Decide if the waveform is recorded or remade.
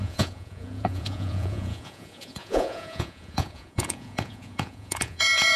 remade